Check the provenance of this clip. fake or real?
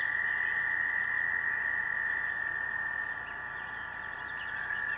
fake